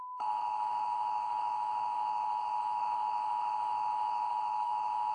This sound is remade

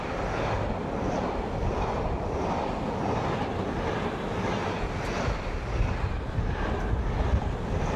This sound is recorded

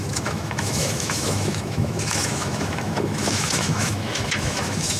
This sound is remade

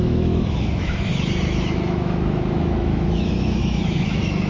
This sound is remade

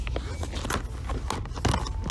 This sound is recorded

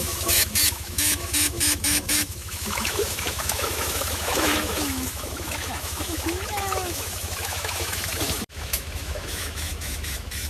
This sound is remade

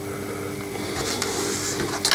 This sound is recorded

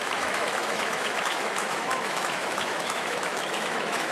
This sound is remade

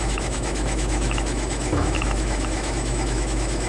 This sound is remade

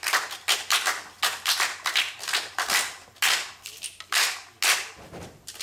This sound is recorded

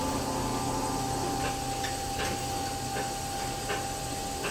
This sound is recorded